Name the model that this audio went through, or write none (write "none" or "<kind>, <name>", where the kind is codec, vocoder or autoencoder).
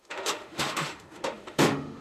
autoencoder, DAC-VAE